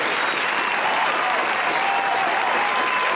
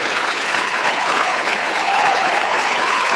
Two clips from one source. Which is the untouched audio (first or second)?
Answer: first